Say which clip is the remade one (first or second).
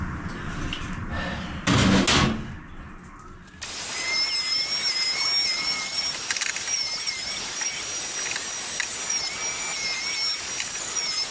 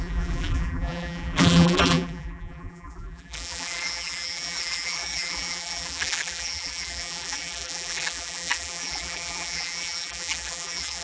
second